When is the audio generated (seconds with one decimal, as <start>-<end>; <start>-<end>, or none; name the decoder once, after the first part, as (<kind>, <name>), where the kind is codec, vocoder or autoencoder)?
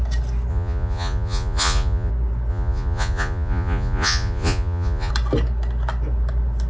0.5-2.1 (vocoder, Vocos); 2.5-5.1